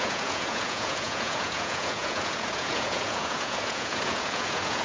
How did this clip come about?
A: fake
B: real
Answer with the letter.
A